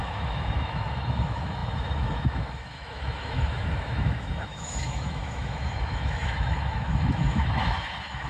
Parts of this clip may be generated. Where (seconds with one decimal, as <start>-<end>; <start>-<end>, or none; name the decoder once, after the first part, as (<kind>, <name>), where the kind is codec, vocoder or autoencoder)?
0.0-8.3 (autoencoder, DAC-VAE)